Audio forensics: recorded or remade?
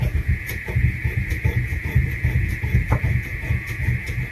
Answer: remade